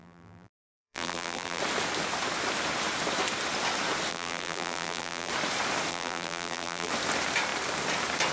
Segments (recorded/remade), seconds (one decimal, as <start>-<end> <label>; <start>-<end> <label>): 0.0-1.6 remade; 1.6-4.1 recorded; 4.1-5.3 remade; 5.3-5.9 recorded; 5.9-6.9 remade; 6.9-8.3 recorded